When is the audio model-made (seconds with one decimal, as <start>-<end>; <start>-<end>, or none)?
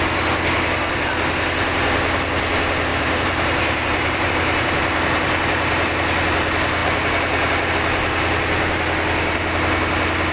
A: 2.9-4.3